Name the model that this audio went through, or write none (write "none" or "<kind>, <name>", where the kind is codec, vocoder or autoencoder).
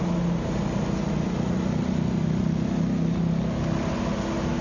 none